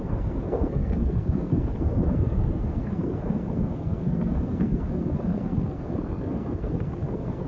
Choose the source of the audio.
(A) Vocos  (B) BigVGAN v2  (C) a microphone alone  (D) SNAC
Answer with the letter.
D